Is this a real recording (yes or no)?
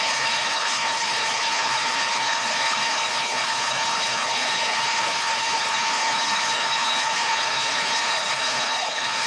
no